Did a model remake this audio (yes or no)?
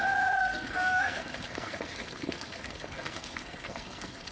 yes